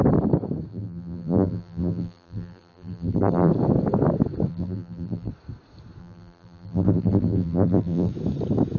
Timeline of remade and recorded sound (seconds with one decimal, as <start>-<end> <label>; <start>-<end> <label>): 0.0-0.7 recorded; 0.7-3.5 remade; 3.5-4.5 recorded; 4.5-5.3 remade; 5.3-6.0 recorded; 6.0-8.1 remade; 8.1-8.8 recorded